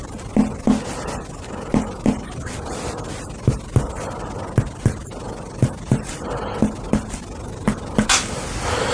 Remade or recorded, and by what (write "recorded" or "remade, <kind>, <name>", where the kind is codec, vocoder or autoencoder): recorded